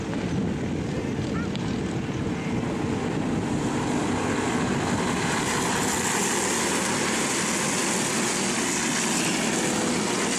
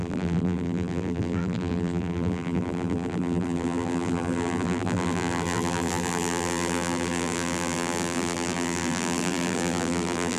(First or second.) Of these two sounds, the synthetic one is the second